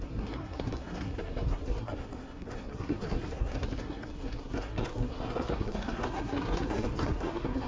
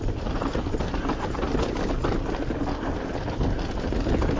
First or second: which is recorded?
second